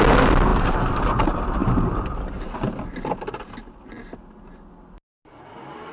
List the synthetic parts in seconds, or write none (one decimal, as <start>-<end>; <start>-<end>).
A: none

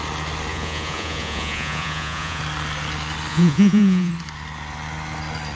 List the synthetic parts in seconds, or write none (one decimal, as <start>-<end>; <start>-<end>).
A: 0.5-2.4; 3.3-4.1

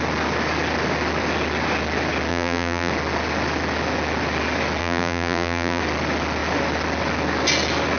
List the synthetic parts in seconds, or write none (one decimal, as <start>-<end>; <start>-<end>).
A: 2.3-2.9; 4.8-5.8

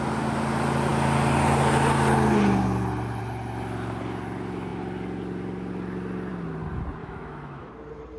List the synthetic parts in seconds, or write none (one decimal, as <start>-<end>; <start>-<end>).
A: 7.0-7.7

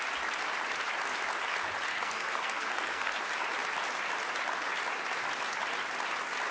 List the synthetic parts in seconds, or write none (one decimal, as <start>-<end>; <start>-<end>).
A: 1.9-3.2